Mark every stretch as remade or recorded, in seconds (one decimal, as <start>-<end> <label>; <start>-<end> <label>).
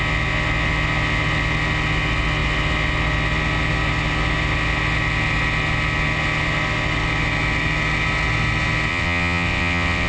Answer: 0.0-8.9 recorded; 8.9-10.1 remade